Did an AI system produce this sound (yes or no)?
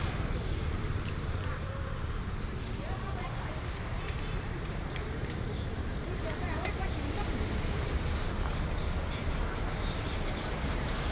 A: yes